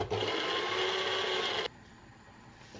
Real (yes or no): yes